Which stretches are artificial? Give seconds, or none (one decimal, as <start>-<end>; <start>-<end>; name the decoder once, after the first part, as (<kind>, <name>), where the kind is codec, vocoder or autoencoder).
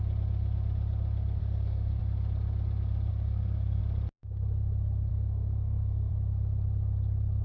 1.4-2.0 (codec, SNAC); 3.1-3.8; 5.1-6.1